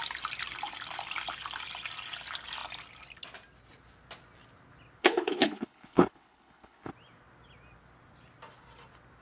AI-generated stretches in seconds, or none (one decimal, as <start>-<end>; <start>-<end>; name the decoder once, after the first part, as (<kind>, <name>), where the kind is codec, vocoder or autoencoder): 5.0-6.9 (codec, HILCodec)